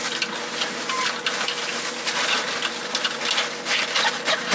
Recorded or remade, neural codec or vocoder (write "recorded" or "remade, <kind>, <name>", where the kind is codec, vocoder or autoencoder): recorded